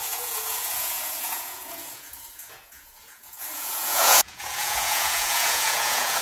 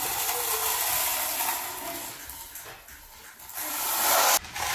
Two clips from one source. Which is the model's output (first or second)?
first